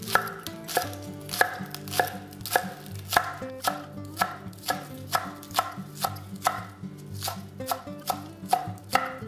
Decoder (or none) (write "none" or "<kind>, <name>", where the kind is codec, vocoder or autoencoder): none